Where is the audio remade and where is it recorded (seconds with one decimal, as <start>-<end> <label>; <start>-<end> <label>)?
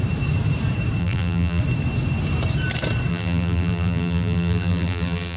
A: 0.0-1.0 recorded; 1.0-1.6 remade; 1.6-3.1 recorded; 3.1-5.4 remade